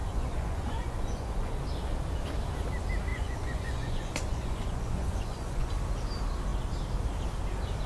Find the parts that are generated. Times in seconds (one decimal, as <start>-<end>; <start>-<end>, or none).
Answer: 0.0-1.6; 3.1-5.7